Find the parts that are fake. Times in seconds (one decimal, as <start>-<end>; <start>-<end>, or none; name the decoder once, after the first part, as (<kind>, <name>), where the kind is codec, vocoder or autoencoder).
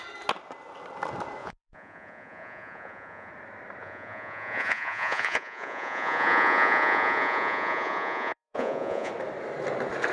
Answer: 1.4-3.3 (vocoder, Vocos); 3.8-9.1